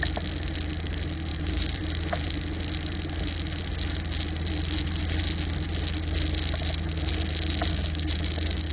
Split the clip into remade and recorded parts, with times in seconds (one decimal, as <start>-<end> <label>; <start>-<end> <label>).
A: 0.0-1.3 recorded; 1.3-1.8 remade; 1.8-7.7 recorded; 7.7-8.7 remade